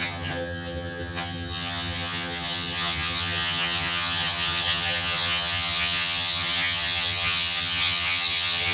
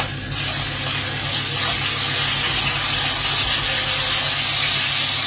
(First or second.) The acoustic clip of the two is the second